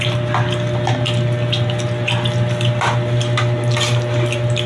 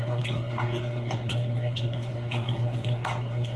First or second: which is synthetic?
second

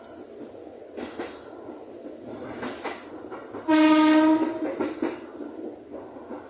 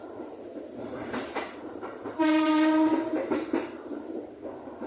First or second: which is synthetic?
second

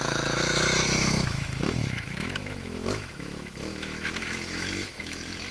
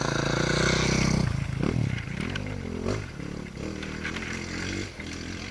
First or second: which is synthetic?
first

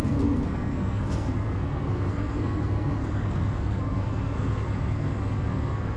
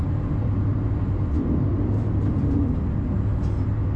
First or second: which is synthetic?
first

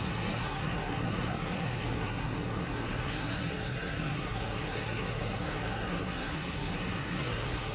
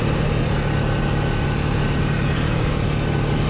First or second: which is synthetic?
first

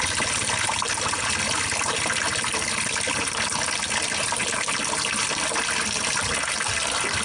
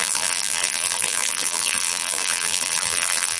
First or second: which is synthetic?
second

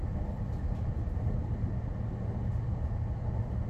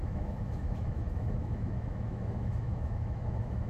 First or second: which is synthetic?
second